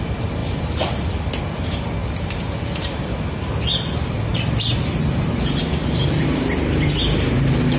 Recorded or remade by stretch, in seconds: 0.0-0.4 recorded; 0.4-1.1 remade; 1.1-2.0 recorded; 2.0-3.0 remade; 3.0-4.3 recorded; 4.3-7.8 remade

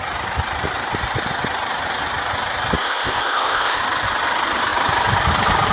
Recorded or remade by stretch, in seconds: 0.0-2.8 recorded; 2.8-3.8 remade; 3.8-5.7 recorded

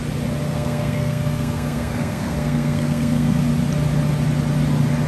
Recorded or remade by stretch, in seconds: 0.0-0.5 recorded; 0.5-3.4 remade; 3.4-5.1 recorded

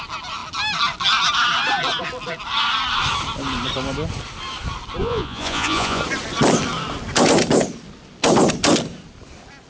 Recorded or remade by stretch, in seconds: 0.0-5.0 recorded; 5.0-6.0 remade; 6.0-9.7 recorded

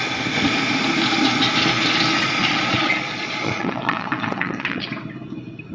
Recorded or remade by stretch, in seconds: 0.0-2.2 recorded; 2.2-4.9 remade; 4.9-5.7 recorded

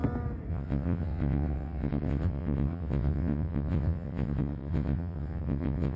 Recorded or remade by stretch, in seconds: 0.0-0.5 recorded; 0.5-6.0 remade

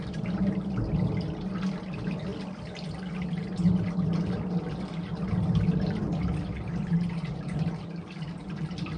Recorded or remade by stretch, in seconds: 0.0-9.0 recorded